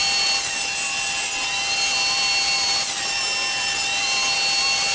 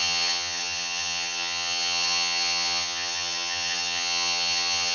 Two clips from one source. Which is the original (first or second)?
first